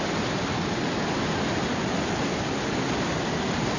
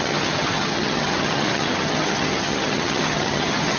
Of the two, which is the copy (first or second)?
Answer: second